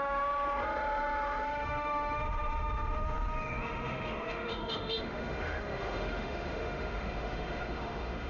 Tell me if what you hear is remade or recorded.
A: remade